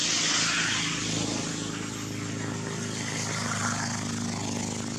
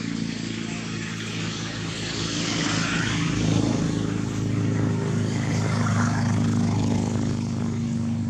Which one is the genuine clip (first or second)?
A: first